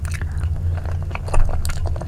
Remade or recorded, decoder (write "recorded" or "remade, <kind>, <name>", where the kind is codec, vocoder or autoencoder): recorded